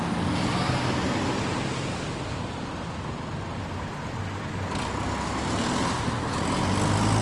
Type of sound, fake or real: real